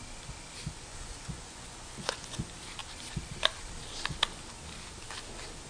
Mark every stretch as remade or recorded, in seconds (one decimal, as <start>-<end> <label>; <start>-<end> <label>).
0.0-0.9 recorded; 0.9-2.4 remade; 2.4-5.7 recorded